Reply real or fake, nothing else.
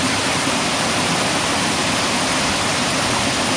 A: real